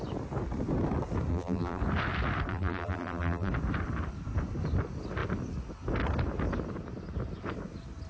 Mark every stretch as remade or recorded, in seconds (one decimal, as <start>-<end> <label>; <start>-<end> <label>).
0.0-1.3 recorded; 1.3-1.8 remade; 1.8-2.5 recorded; 2.5-3.5 remade; 3.5-8.1 recorded